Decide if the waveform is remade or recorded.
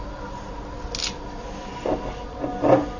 recorded